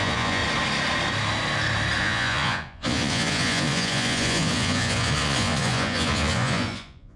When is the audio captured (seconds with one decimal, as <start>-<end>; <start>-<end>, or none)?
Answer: 0.4-2.0